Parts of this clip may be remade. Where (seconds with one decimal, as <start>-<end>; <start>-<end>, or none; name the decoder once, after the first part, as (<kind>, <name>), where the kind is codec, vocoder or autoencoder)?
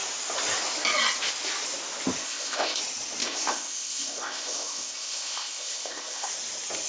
2.2-2.8 (codec, ZipCodec); 3.2-6.3